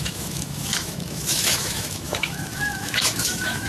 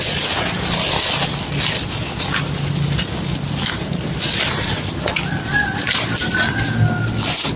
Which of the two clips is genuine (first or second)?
second